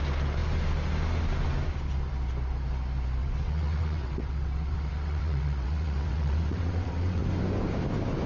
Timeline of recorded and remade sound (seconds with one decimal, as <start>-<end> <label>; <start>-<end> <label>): 0.0-3.2 recorded; 3.2-7.2 remade; 7.2-8.3 recorded